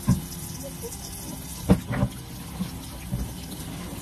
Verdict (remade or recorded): recorded